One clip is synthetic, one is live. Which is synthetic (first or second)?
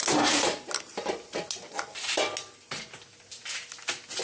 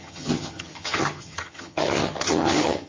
second